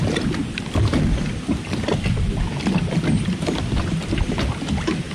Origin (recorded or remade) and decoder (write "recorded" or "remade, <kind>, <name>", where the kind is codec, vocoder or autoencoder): recorded